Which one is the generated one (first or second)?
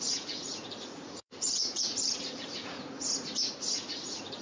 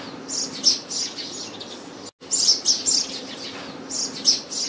first